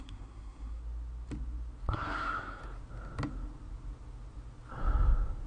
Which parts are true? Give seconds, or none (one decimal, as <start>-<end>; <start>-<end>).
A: 0.8-1.9; 2.6-5.5